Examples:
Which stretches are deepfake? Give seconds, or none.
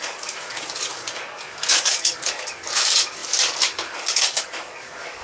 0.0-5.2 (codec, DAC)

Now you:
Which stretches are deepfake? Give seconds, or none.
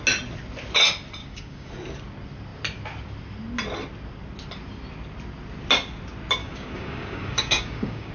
1.2-1.7 (codec, DAC); 6.4-8.1